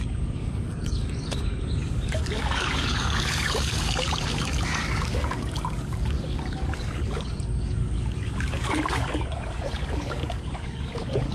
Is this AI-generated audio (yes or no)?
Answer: yes